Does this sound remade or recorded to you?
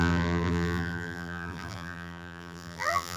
remade